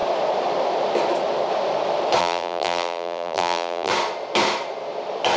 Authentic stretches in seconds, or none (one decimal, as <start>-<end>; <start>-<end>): 0.0-2.2; 3.9-5.4